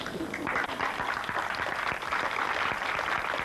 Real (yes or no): no